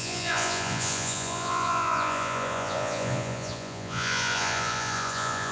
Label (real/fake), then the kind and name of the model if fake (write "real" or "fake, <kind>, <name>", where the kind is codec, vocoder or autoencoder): fake, vocoder, Vocos